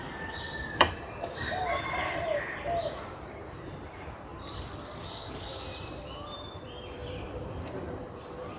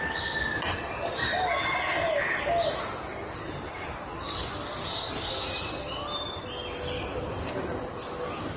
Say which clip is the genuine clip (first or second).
second